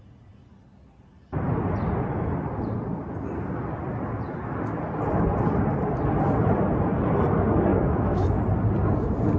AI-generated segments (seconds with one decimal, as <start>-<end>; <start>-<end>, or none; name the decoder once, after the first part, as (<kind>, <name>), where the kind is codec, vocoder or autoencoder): 7.7-8.4 (autoencoder, DAC-VAE)